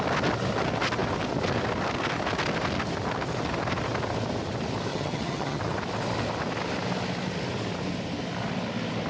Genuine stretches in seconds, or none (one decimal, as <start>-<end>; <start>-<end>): 0.0-4.9; 5.6-9.1